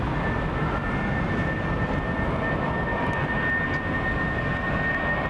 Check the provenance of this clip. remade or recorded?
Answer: recorded